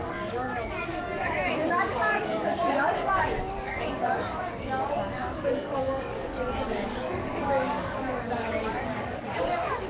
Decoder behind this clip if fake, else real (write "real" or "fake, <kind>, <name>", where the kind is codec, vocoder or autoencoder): fake, codec, DAC